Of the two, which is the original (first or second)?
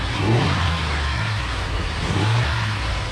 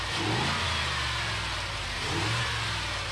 second